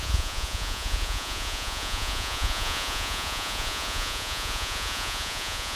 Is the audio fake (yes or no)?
yes